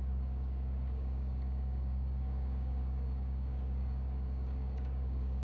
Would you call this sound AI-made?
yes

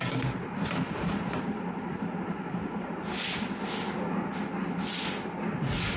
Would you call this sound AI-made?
no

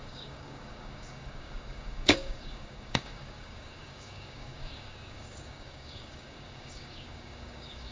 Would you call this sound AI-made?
yes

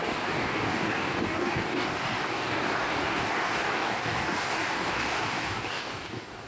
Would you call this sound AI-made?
yes